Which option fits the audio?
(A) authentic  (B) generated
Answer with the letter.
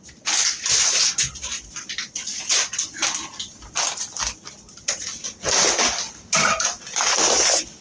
A